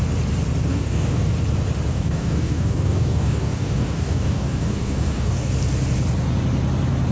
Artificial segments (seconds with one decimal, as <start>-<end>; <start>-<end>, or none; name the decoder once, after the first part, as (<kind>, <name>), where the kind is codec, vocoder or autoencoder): 0.7-1.3 (codec, DAC); 1.9-5.5